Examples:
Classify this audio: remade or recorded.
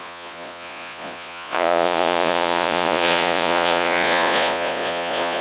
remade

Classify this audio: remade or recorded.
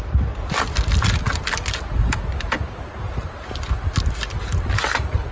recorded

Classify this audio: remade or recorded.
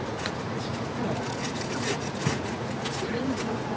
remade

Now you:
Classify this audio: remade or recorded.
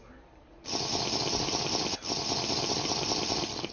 recorded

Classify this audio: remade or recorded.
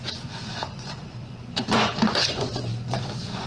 remade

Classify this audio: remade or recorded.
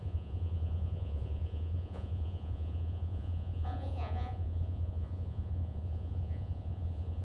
remade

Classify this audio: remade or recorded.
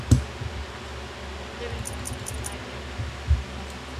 recorded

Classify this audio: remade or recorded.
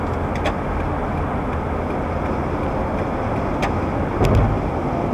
recorded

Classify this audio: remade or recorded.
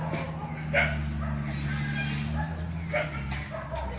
recorded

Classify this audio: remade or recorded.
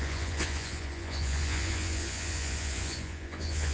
remade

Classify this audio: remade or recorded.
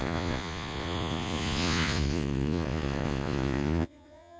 remade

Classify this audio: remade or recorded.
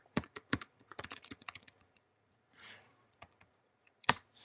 remade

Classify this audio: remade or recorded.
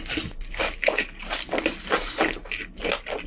recorded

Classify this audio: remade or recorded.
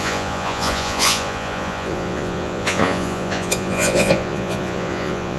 remade